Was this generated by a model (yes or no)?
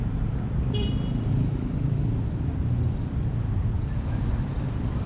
no